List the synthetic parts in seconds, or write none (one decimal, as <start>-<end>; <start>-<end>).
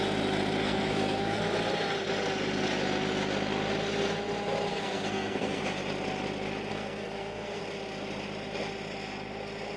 0.6-1.4; 4.7-5.6; 6.7-7.6